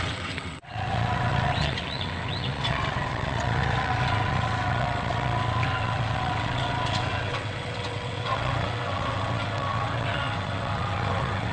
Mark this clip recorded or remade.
remade